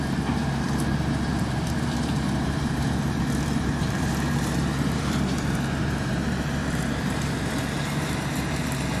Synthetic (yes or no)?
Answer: yes